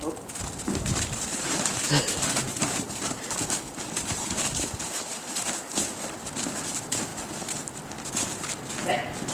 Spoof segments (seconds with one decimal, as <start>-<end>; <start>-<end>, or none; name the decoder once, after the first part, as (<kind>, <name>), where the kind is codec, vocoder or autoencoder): 1.3-6.1 (vocoder, BigVGAN v2)